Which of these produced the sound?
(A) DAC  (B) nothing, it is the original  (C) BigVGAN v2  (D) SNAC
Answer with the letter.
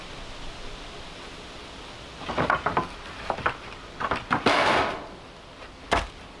B